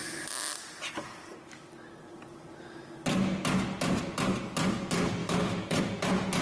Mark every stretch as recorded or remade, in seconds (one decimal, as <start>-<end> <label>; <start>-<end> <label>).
0.0-5.2 recorded; 5.2-5.8 remade; 5.8-6.4 recorded